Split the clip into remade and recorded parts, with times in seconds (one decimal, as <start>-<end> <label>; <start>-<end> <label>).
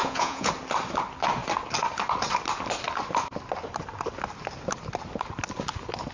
0.0-0.5 remade; 0.5-6.1 recorded